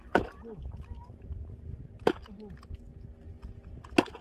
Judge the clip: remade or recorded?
recorded